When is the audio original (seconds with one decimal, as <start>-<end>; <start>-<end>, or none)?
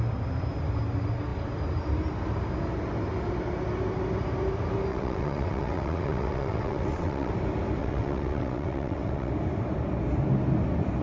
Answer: 0.0-4.9; 7.3-7.8; 9.3-11.0